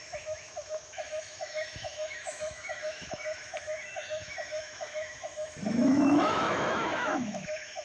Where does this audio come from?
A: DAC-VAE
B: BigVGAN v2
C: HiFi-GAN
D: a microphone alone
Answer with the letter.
A